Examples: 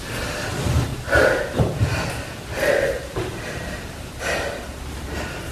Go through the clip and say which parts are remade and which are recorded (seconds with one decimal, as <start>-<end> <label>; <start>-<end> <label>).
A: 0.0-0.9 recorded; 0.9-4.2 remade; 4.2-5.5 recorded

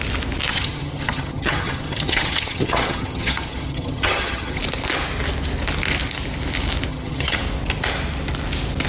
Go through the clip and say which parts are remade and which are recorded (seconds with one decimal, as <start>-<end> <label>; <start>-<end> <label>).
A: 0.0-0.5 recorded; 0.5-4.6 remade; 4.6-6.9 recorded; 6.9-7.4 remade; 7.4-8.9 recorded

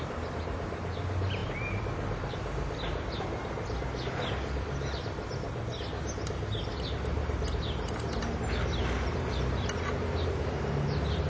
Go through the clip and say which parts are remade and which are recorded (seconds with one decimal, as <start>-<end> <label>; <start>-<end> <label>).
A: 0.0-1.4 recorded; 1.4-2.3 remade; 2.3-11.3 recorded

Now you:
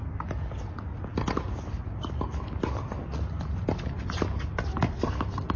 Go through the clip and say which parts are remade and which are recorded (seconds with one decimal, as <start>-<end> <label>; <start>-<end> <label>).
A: 0.0-5.6 recorded